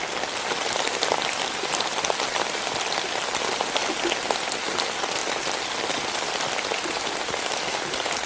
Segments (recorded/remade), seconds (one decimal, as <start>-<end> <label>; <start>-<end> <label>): 0.0-8.3 recorded